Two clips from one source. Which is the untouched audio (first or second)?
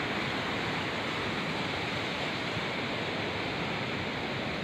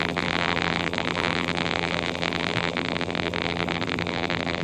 first